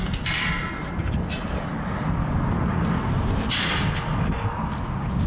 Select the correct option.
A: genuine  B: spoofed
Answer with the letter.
A